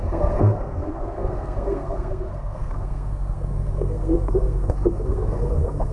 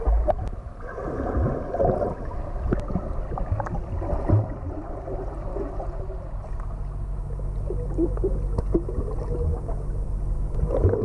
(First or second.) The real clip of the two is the second